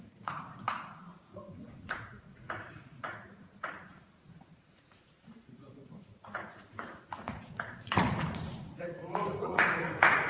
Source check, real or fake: fake